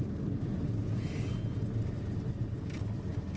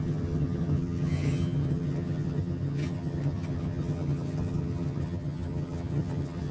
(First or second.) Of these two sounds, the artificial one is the second